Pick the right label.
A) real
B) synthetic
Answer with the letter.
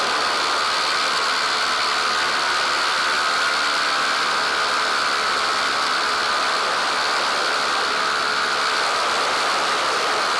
A